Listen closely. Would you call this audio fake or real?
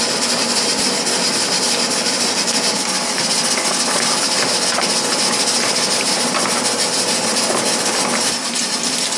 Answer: real